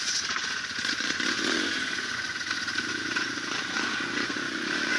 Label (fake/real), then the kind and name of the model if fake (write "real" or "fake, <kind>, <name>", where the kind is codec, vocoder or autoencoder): fake, vocoder, Vocos